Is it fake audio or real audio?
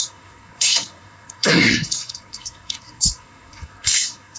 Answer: fake